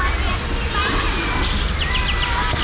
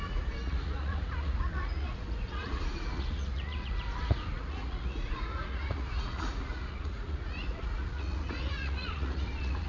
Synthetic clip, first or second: second